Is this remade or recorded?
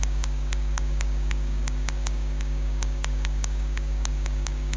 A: remade